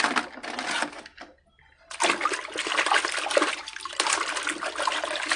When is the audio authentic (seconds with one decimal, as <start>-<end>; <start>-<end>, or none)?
0.0-5.4